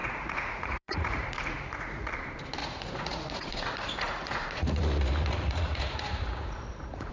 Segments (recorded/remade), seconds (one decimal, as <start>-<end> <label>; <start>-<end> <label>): 0.0-2.1 remade; 2.1-2.6 recorded; 2.6-7.1 remade